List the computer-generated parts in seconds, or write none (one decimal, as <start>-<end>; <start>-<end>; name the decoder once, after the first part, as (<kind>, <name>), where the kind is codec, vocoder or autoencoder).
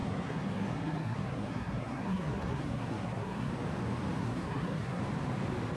0.0-3.5 (codec, SNAC); 4.2-5.0